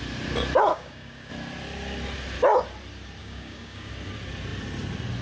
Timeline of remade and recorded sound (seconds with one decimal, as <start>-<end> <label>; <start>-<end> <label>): 0.0-0.7 recorded; 0.7-1.3 remade; 1.3-3.2 recorded; 3.2-3.9 remade; 3.9-5.2 recorded